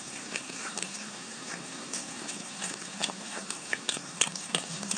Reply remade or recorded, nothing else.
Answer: remade